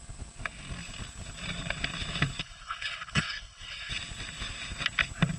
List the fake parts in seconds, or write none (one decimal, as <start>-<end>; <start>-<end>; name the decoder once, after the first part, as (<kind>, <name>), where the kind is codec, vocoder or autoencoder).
2.4-3.9 (codec, HILCodec)